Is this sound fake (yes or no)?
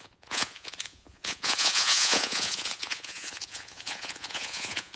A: yes